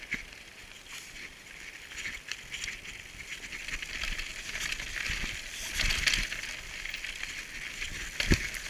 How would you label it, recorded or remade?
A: recorded